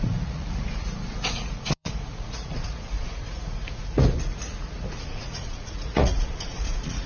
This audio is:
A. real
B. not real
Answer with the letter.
B